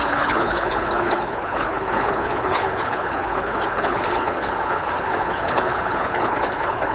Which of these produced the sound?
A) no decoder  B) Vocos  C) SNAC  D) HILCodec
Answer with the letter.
D